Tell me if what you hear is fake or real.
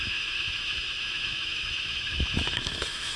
fake